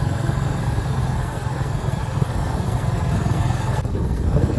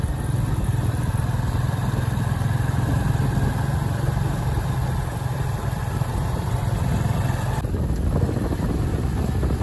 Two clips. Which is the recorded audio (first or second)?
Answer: second